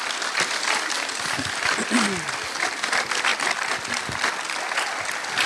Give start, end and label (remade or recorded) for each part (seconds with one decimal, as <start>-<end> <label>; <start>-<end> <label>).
0.0-3.3 recorded; 3.3-3.9 remade; 3.9-5.5 recorded